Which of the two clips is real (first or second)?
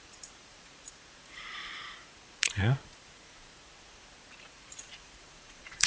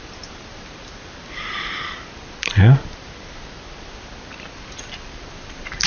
second